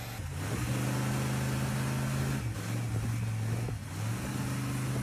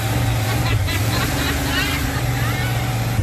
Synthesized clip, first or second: second